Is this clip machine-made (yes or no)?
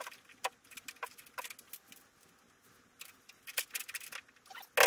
no